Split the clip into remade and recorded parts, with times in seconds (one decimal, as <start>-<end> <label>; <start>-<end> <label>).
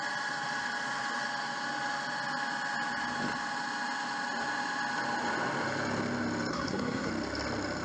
0.0-6.5 recorded; 6.5-7.1 remade; 7.1-7.8 recorded